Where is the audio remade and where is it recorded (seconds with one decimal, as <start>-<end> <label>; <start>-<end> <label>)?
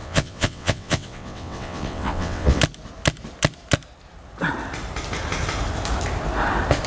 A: 0.0-2.6 remade; 2.6-6.9 recorded